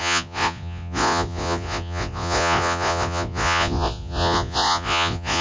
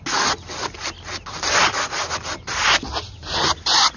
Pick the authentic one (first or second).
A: second